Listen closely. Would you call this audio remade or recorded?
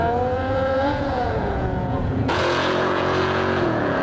remade